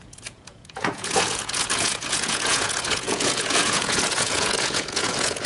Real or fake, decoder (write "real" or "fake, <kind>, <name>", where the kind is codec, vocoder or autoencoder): fake, vocoder, Vocos